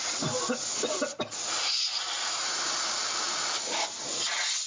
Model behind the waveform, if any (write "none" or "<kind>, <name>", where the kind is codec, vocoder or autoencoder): none